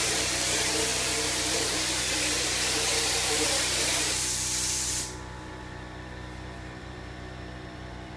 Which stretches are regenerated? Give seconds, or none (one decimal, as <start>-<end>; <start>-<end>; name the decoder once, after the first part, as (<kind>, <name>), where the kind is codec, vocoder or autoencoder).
0.0-8.2 (vocoder, BigVGAN v2)